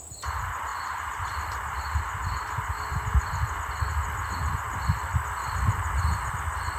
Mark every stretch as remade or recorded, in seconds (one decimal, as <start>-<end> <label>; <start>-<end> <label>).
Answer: 0.0-0.7 recorded; 0.7-4.8 remade; 4.8-5.4 recorded; 5.4-6.3 remade; 6.3-6.8 recorded